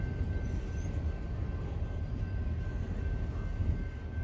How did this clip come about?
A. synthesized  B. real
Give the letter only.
B